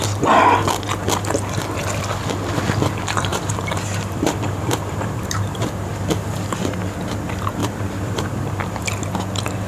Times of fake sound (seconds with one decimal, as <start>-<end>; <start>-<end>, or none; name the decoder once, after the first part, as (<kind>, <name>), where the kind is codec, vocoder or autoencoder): 3.3-5.9 (vocoder, BigVGAN v2); 7.6-8.9